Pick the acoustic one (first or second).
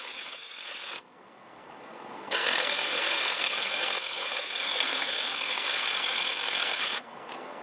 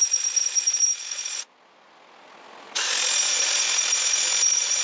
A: second